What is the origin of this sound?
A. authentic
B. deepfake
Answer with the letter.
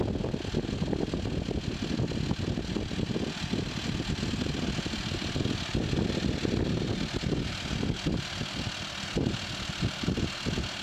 A